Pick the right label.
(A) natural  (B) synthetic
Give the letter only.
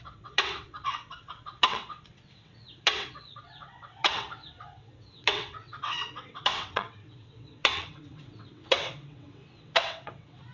B